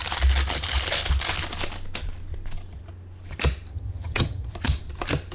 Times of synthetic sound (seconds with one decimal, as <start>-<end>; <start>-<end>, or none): 3.7-4.5